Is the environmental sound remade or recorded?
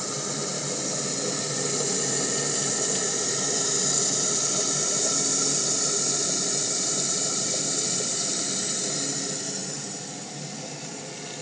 recorded